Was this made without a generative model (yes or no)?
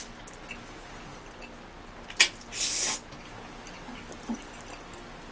yes